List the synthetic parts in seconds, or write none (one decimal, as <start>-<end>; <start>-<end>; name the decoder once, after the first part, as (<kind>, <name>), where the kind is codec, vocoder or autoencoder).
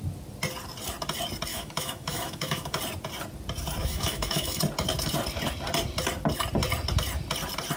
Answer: 1.5-2.8 (autoencoder, DAC-VAE); 3.8-4.6